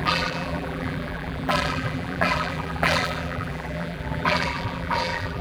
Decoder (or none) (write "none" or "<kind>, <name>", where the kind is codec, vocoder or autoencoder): vocoder, BigVGAN v2